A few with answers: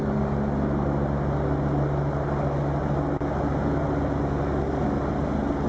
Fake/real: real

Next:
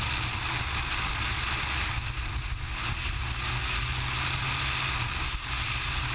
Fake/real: real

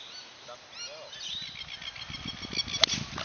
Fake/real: real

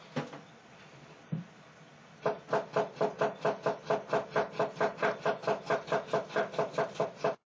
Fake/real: real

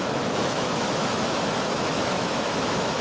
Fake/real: fake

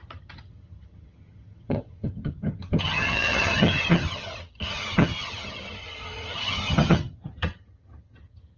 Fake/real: fake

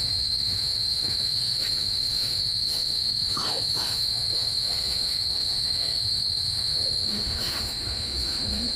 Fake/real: fake